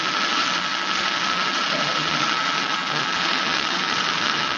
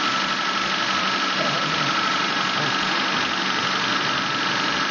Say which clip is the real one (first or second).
second